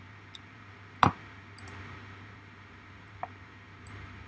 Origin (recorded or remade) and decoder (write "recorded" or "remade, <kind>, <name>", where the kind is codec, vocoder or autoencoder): remade, vocoder, BigVGAN v2